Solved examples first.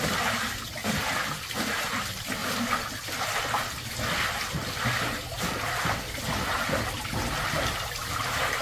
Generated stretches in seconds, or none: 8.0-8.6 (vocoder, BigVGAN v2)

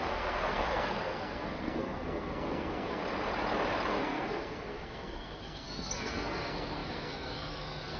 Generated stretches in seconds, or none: 0.0-3.0 (codec, SNAC); 3.9-8.0

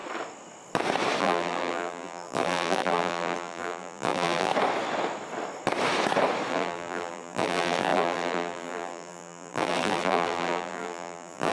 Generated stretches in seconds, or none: 1.2-4.5 (vocoder, BigVGAN v2); 6.5-11.5

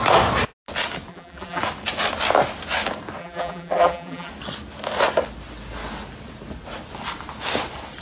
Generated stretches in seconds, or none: 1.1-1.6 (vocoder, BigVGAN v2); 3.2-4.3

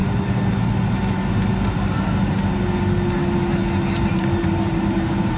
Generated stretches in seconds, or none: 4.1-5.4 (vocoder, BigVGAN v2)

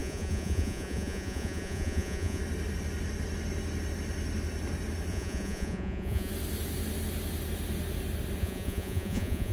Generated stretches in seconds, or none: 0.0-2.4 (vocoder, Vocos); 5.1-6.3; 8.4-9.5

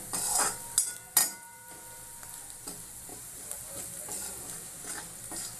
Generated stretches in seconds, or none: 1.2-1.7 (vocoder, BigVGAN v2); 3.1-3.8